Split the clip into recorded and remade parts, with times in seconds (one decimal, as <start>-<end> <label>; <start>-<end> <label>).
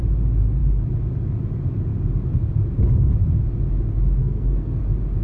0.0-4.2 recorded; 4.2-4.8 remade; 4.8-5.2 recorded